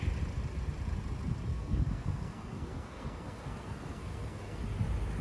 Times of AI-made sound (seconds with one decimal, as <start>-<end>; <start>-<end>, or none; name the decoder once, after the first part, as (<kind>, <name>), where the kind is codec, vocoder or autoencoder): 1.5-4.6 (codec, SNAC)